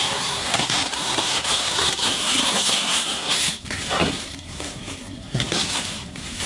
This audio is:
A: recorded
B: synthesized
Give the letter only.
B